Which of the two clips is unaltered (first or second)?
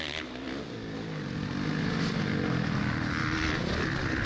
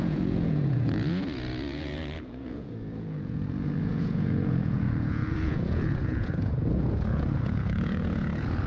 first